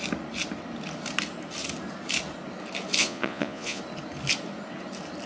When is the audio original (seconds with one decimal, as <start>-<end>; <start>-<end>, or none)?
0.0-3.0; 3.8-5.3